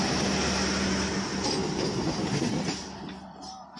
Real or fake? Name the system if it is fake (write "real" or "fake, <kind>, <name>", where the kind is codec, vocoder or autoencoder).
real